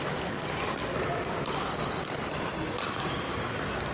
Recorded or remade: recorded